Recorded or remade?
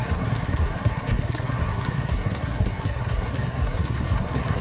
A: remade